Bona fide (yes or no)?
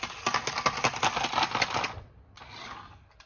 yes